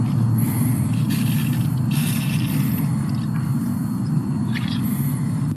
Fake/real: fake